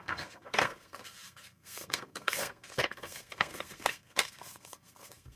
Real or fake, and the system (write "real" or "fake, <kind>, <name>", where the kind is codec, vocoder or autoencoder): fake, codec, SNAC